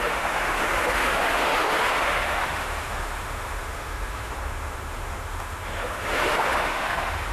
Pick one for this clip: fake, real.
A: fake